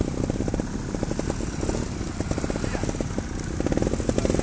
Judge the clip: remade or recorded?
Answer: recorded